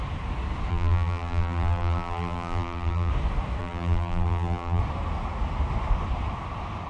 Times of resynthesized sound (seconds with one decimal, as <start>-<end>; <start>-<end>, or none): 0.7-3.1; 3.6-4.8